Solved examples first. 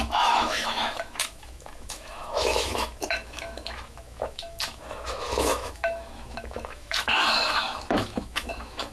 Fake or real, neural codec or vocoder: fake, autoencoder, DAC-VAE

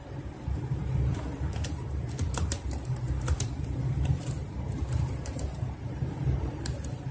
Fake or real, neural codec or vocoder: fake, vocoder, BigVGAN v2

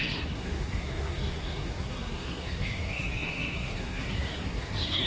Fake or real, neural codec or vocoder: fake, codec, SNAC